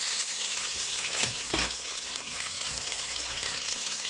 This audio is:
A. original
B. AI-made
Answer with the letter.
B